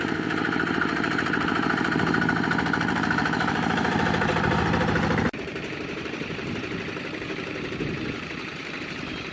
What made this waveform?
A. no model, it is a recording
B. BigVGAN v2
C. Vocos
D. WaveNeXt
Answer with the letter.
B